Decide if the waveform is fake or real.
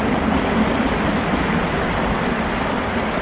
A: real